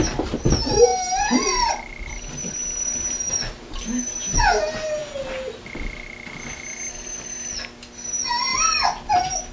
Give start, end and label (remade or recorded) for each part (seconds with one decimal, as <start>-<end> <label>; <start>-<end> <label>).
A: 0.0-9.5 recorded